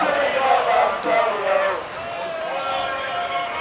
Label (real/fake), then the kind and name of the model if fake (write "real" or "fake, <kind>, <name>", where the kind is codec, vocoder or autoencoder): real